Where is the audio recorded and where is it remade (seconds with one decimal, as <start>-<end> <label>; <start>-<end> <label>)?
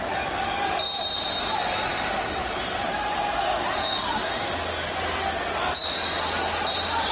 0.0-3.8 recorded; 3.8-4.3 remade; 4.3-7.1 recorded